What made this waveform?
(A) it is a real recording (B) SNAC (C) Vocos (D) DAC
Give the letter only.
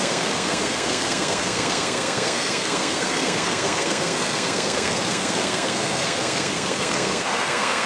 B